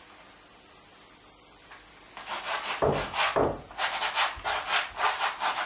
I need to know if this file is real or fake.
real